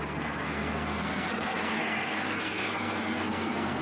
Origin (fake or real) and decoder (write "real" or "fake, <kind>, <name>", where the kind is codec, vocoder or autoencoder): fake, codec, SNAC